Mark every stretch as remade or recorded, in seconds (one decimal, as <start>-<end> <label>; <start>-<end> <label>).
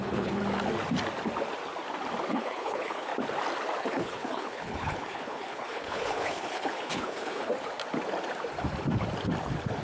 0.0-0.4 remade; 0.4-2.3 recorded; 2.3-3.1 remade; 3.1-3.8 recorded; 3.8-7.5 remade; 7.5-9.8 recorded